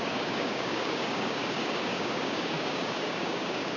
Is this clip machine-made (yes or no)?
yes